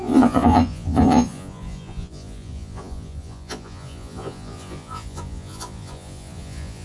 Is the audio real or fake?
fake